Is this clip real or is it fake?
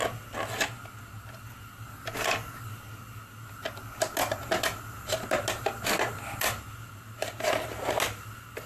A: real